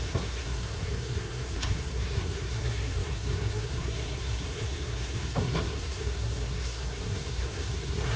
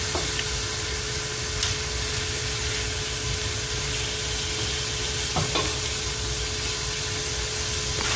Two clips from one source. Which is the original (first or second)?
second